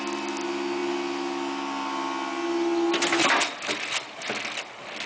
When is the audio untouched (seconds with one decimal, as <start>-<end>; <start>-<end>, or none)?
0.0-5.1